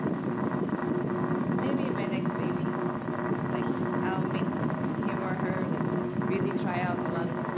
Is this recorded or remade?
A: recorded